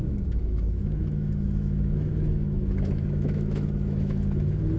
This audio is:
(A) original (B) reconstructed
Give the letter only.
B